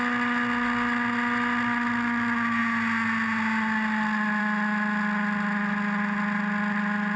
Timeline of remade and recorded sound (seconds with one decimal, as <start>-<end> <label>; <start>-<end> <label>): 0.0-7.2 recorded